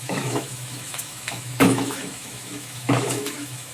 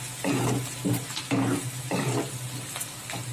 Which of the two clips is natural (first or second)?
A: second